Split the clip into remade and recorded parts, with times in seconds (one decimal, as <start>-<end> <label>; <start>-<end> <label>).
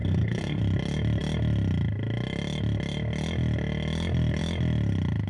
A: 0.0-0.6 remade; 0.6-5.3 recorded